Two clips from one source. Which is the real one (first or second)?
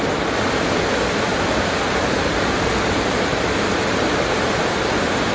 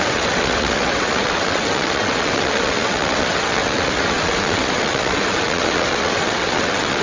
first